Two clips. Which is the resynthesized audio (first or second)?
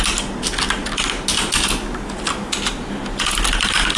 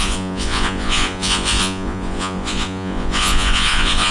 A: second